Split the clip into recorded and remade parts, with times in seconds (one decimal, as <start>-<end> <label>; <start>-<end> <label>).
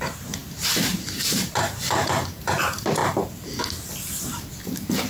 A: 0.0-3.0 remade; 3.0-4.2 recorded; 4.2-5.1 remade